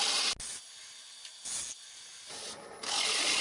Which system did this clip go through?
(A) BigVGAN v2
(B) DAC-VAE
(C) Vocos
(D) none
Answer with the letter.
D